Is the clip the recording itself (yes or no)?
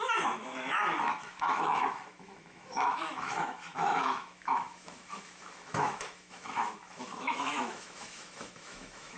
no